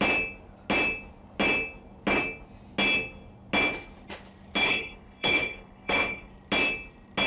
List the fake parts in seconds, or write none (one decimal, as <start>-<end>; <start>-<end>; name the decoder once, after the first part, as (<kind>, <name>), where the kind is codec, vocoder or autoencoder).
4.6-6.3 (codec, HILCodec)